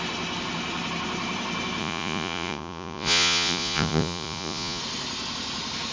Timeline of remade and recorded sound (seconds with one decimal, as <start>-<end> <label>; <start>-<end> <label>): 0.0-1.8 recorded; 1.8-4.8 remade; 4.8-5.9 recorded